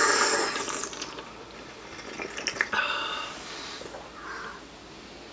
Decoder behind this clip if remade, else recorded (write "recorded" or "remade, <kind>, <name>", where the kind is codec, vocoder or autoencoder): recorded